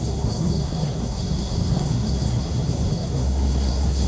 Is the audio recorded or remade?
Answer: remade